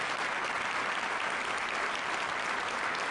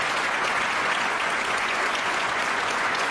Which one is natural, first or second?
first